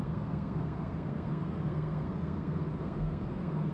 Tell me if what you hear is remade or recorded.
remade